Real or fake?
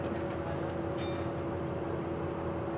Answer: real